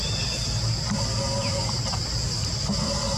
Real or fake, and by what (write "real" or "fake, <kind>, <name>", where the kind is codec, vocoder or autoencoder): real